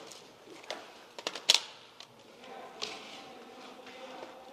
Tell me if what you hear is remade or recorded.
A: recorded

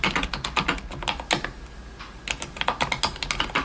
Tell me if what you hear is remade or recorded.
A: recorded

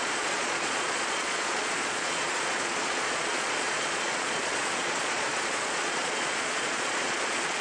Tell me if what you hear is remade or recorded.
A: remade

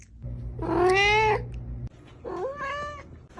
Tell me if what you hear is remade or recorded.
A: recorded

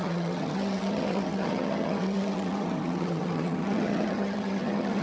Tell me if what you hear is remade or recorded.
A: remade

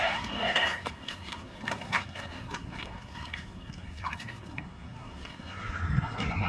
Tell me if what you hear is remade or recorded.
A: remade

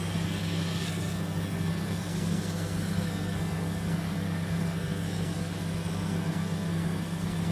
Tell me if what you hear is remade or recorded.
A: remade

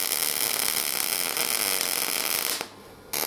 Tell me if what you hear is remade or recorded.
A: recorded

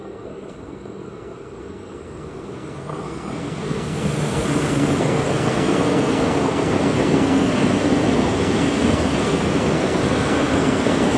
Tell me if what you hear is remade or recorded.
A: remade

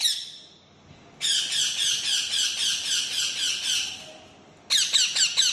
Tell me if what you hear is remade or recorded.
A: recorded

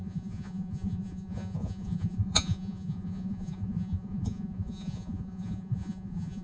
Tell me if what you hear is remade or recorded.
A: remade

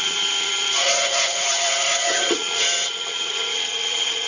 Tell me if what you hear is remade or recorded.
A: remade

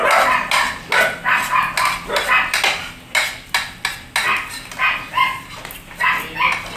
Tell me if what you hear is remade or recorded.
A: recorded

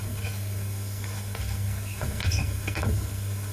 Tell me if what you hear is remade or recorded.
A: remade